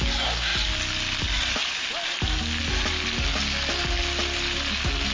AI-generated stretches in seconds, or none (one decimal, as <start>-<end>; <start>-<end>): none